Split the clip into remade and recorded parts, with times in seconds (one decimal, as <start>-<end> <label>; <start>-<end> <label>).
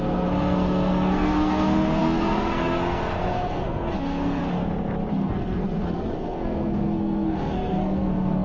0.0-4.4 remade; 4.4-5.1 recorded; 5.1-8.4 remade